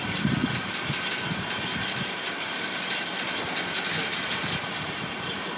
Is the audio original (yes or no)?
no